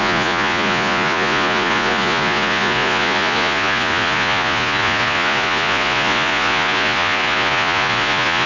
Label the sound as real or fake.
fake